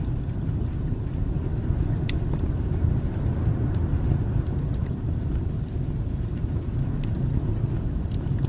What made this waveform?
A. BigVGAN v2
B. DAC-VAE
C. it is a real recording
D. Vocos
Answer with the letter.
C